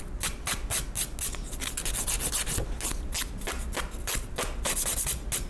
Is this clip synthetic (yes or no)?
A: no